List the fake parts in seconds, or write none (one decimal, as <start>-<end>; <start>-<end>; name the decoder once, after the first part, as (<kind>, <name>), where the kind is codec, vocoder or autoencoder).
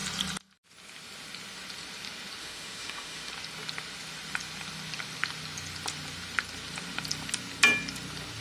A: 2.4-3.3 (autoencoder, DAC-VAE)